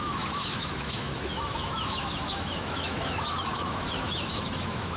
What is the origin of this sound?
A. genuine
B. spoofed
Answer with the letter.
B